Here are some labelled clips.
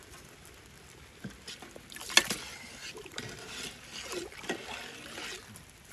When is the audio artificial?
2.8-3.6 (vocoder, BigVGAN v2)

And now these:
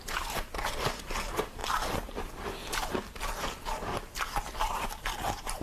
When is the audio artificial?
0.0-1.6 (vocoder, BigVGAN v2); 4.4-5.6

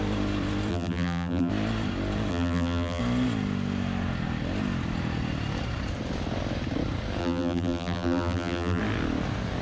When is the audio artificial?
0.7-1.5 (vocoder, BigVGAN v2); 2.3-3.0; 7.2-8.8

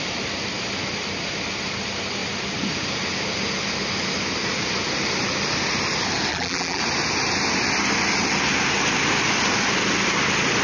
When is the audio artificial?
6.3-6.8 (vocoder, BigVGAN v2)